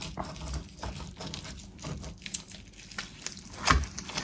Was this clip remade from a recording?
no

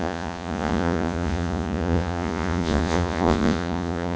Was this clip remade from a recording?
yes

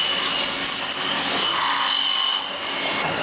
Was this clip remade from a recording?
no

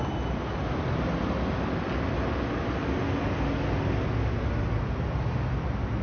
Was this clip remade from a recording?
no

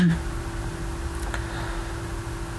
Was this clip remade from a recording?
no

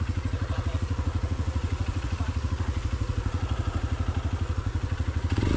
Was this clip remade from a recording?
yes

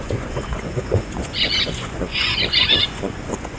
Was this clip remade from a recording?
yes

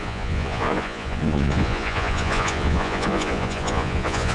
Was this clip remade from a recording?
yes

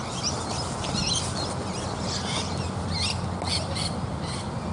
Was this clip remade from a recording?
no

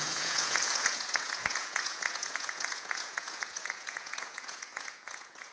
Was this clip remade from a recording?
yes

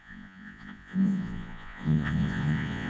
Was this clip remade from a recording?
yes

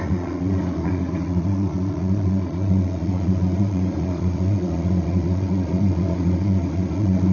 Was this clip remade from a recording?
yes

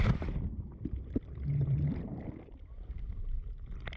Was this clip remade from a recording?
no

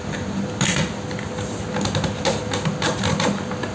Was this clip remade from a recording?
no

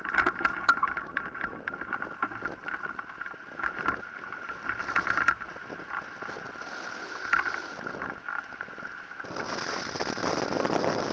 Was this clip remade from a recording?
no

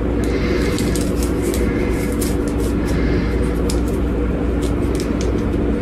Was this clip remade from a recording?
no